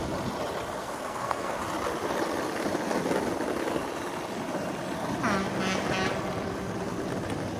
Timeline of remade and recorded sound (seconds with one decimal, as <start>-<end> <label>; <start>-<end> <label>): 0.0-0.8 recorded; 0.8-1.6 remade; 1.6-7.6 recorded